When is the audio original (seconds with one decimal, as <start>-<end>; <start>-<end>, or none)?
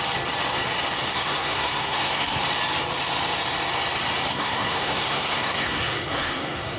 0.0-1.1; 2.4-4.3